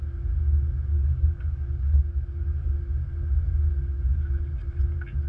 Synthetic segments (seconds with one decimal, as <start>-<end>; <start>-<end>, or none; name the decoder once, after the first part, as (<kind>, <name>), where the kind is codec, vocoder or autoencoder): 0.9-2.7 (codec, DAC); 3.9-4.4